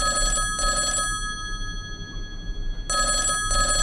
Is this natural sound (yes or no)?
yes